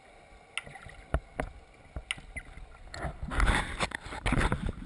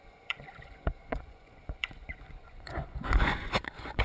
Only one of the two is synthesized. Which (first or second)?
second